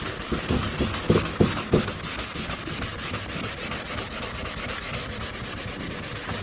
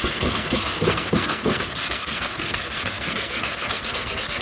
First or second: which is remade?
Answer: second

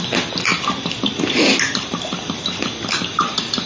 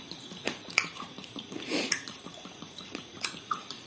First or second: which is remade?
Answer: second